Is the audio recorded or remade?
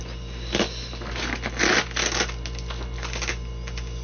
recorded